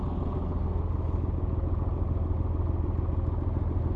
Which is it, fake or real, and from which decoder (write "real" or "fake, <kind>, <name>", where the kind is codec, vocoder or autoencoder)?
real